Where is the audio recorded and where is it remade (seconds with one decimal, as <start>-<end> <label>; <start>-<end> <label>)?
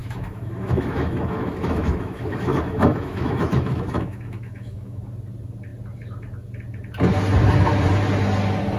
0.0-5.0 remade; 5.0-8.8 recorded